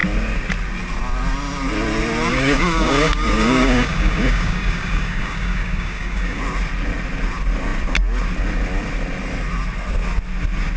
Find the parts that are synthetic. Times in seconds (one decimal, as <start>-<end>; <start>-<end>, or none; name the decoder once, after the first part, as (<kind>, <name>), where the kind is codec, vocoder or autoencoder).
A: 2.3-6.4 (codec, DAC)